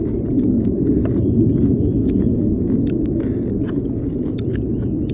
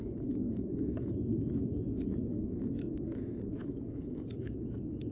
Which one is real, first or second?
first